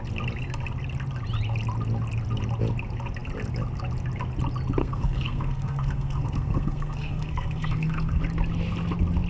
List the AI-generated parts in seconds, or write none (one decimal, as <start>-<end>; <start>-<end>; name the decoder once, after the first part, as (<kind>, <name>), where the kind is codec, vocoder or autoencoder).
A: 4.8-8.2 (codec, SNAC)